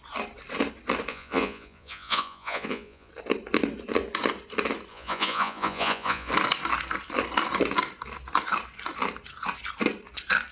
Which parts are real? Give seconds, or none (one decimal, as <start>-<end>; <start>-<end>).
0.0-1.1; 3.1-4.9; 6.3-10.5